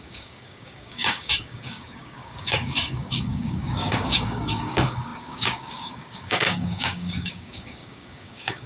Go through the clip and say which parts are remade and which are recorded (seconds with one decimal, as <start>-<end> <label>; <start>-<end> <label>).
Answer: 0.0-8.7 remade